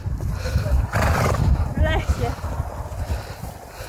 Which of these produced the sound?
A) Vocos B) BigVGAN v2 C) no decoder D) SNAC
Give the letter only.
C